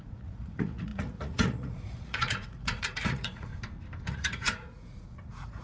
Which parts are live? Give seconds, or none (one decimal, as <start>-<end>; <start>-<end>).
3.5-4.1